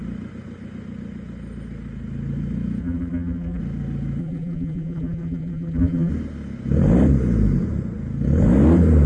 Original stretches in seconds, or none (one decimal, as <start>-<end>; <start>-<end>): 0.0-2.8; 3.6-4.2; 6.1-9.1